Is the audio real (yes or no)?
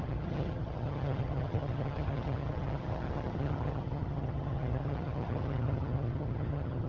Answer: no